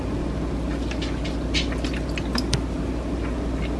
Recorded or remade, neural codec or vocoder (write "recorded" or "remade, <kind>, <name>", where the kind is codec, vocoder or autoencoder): recorded